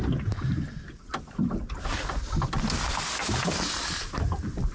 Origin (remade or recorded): recorded